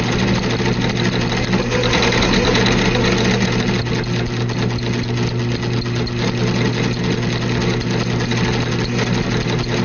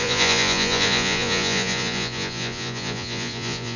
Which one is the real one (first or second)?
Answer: first